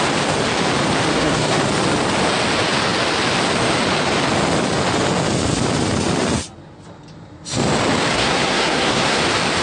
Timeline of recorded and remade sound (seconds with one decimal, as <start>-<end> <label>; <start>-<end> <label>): 0.0-1.1 recorded; 1.1-1.7 remade; 1.7-8.1 recorded; 8.1-9.2 remade; 9.2-9.6 recorded